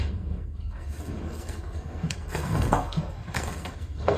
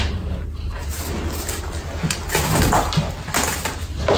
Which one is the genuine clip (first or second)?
second